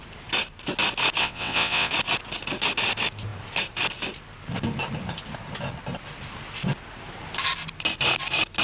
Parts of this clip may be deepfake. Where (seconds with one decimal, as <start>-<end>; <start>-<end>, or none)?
1.2-1.9